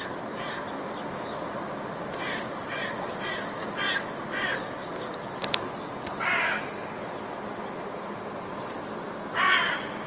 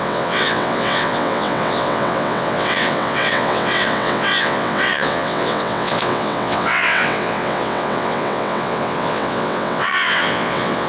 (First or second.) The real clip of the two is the first